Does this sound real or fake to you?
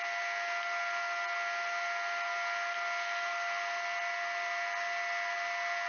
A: real